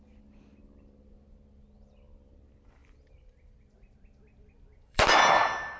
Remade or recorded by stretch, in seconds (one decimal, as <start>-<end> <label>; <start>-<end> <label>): 0.0-2.8 recorded; 2.8-5.8 remade